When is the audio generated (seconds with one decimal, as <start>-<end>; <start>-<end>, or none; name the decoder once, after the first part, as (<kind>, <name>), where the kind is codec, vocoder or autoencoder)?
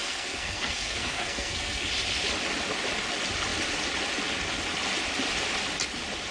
0.0-1.9 (codec, SNAC)